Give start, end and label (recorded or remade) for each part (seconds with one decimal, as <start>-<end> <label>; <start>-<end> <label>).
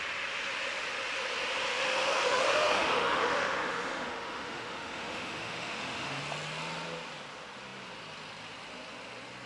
0.0-1.7 recorded; 1.7-6.2 remade; 6.2-9.5 recorded